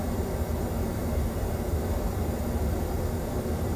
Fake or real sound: fake